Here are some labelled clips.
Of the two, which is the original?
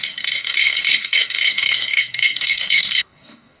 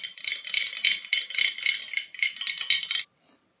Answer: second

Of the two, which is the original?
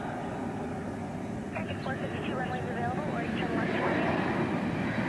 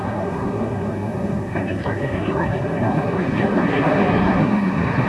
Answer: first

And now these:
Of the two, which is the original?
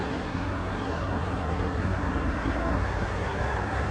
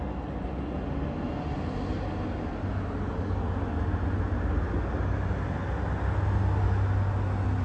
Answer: second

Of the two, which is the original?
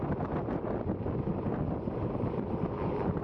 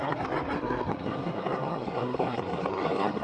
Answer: first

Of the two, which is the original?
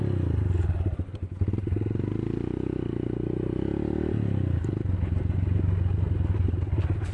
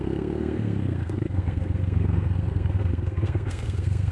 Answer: first